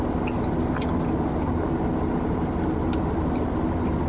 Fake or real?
real